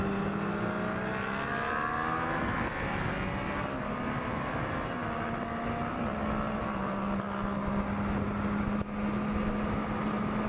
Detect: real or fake real